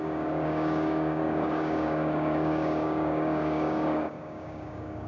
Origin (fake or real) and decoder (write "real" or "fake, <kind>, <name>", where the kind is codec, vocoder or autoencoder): fake, codec, DAC